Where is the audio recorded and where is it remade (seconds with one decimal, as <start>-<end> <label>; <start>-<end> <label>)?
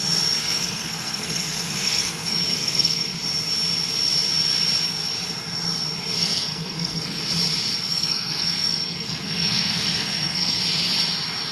0.0-0.4 recorded; 0.4-3.1 remade; 3.1-6.2 recorded; 6.2-7.2 remade; 7.2-7.9 recorded; 7.9-10.6 remade; 10.6-11.5 recorded